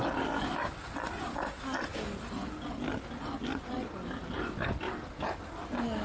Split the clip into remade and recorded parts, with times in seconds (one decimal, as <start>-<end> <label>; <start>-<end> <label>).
0.0-6.0 recorded